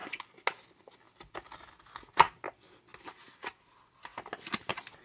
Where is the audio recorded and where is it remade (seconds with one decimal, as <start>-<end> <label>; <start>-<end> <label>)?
0.0-5.0 recorded